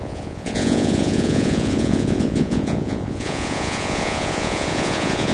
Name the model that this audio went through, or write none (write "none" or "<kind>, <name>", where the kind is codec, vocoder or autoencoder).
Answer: vocoder, Vocos